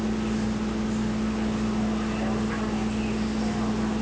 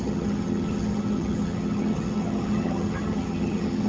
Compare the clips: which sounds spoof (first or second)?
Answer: second